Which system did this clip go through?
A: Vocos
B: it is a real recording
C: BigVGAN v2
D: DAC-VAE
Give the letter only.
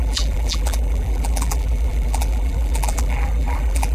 C